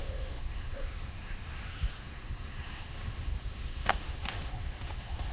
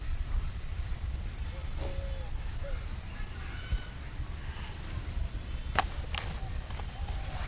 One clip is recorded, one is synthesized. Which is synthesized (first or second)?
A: first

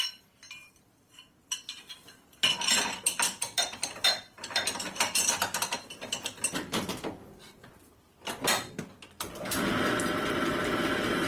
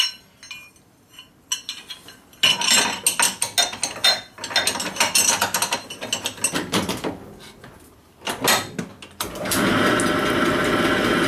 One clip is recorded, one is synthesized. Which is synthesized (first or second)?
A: first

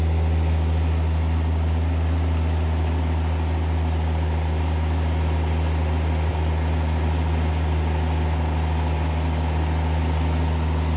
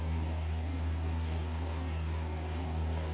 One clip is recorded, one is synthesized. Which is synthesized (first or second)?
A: second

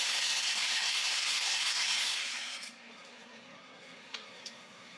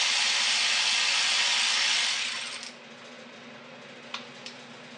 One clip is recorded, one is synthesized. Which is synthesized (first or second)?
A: first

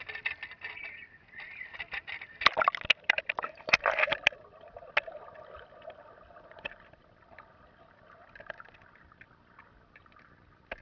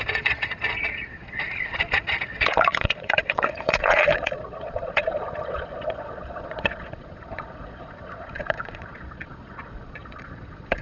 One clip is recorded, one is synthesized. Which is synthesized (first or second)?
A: second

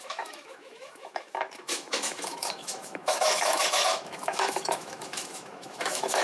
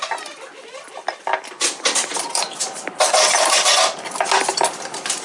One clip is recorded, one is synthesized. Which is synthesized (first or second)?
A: first